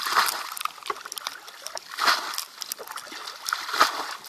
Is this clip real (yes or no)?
yes